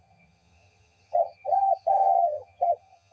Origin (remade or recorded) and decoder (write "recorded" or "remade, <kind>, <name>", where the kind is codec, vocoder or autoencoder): remade, vocoder, HiFi-GAN